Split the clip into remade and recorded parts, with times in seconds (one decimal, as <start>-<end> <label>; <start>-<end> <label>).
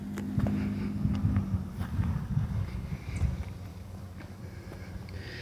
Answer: 0.0-1.9 recorded; 1.9-2.9 remade; 2.9-3.7 recorded; 3.7-4.4 remade; 4.4-5.4 recorded